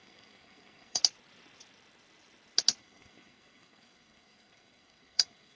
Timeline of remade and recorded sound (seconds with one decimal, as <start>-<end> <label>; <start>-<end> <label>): 0.0-1.0 remade; 1.0-2.8 recorded; 2.8-5.6 remade